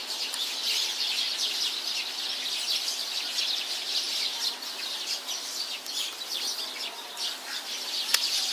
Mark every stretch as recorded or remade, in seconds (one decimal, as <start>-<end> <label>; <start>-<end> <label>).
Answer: 0.0-8.5 recorded